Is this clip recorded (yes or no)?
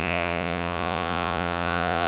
no